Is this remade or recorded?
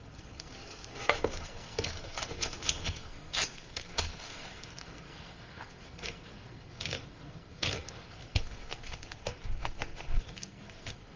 remade